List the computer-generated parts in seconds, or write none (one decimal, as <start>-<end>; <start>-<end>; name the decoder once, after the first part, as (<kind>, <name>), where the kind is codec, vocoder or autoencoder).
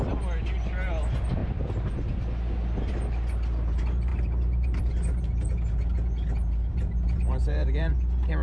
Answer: 4.1-4.8 (vocoder, BigVGAN v2); 6.7-7.9